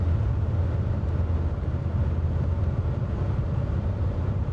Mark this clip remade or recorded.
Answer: recorded